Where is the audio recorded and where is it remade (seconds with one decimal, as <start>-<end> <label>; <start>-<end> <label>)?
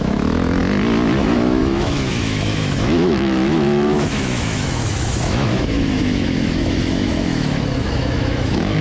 0.0-0.6 remade; 0.6-1.2 recorded; 1.2-8.8 remade